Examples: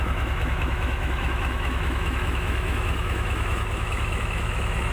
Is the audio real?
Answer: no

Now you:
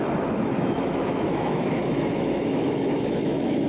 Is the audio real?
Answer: no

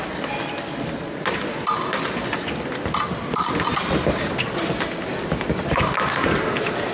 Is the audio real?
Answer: yes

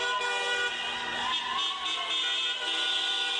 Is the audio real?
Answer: yes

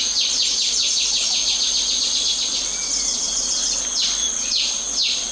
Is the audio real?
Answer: yes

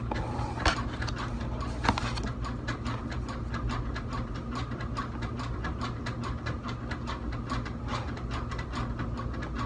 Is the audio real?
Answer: yes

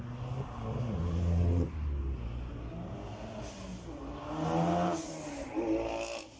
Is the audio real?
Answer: yes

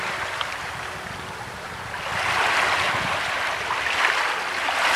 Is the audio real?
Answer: yes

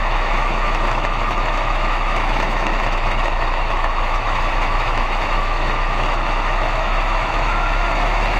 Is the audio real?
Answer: no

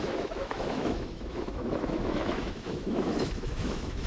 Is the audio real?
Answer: no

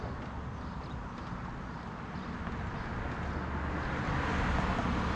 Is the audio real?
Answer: yes